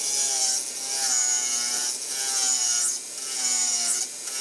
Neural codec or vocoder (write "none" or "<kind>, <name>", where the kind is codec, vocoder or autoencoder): none